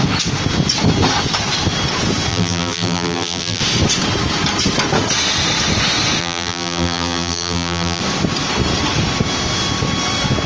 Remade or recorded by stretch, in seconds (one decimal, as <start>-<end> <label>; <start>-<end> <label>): 0.0-2.3 recorded; 2.3-3.6 remade; 3.6-6.2 recorded; 6.2-8.0 remade; 8.0-10.5 recorded